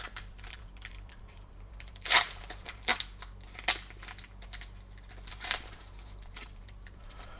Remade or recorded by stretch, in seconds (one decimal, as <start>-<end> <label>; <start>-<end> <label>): 0.0-2.9 remade; 2.9-5.3 recorded; 5.3-7.4 remade